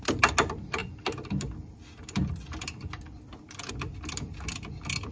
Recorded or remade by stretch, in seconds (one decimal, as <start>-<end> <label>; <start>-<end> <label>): 0.0-0.8 recorded; 0.8-3.7 remade; 3.7-5.1 recorded